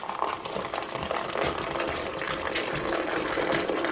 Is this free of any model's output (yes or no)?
yes